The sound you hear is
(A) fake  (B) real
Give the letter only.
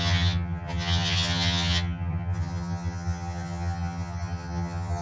A